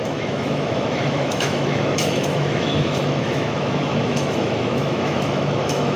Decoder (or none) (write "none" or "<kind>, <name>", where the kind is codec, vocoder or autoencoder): autoencoder, DAC-VAE